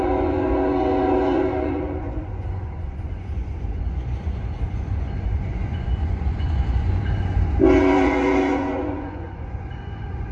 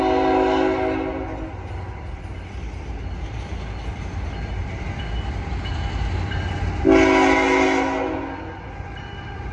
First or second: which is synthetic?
first